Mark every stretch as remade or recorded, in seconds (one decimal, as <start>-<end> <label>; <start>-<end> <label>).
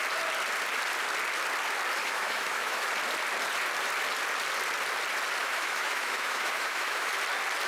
0.0-2.0 recorded; 2.0-2.9 remade; 2.9-5.4 recorded; 5.4-7.1 remade; 7.1-7.7 recorded